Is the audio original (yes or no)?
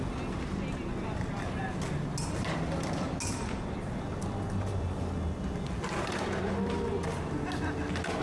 yes